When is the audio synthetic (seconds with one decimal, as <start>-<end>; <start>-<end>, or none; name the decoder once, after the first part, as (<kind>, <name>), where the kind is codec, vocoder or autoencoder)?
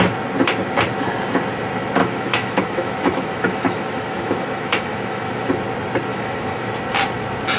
2.0-5.5 (autoencoder, DAC-VAE); 6.1-6.7